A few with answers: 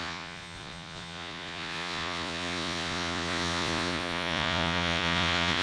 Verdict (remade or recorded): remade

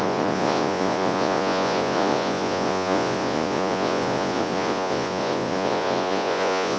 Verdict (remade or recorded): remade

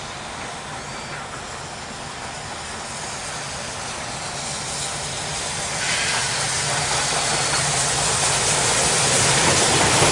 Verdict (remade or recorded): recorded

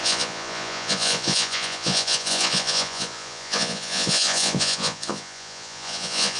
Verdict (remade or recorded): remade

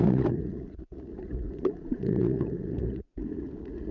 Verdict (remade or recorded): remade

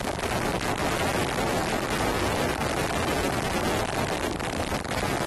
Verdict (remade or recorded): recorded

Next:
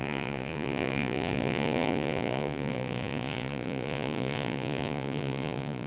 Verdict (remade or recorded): remade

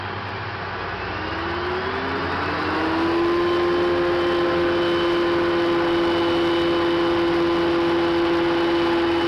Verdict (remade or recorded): recorded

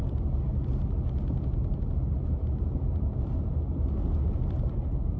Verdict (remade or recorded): recorded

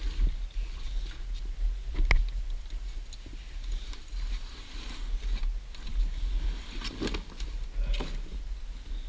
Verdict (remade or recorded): recorded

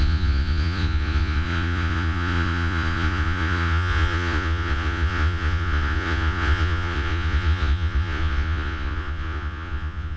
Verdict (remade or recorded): remade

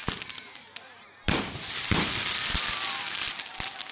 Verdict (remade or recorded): recorded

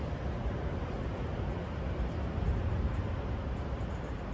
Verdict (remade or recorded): recorded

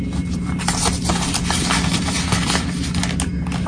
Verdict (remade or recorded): recorded